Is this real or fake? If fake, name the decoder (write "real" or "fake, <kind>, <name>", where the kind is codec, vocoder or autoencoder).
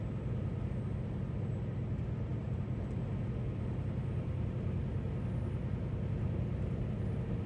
real